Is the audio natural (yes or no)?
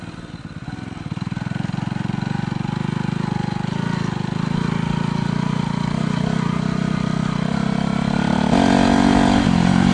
yes